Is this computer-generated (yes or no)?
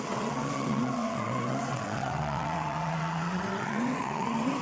yes